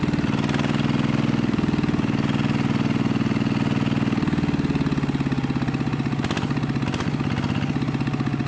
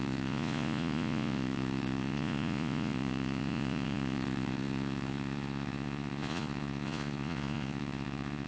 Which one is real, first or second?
first